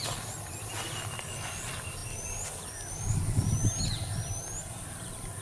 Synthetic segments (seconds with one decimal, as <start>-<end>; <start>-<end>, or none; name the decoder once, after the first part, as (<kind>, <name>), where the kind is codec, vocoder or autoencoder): none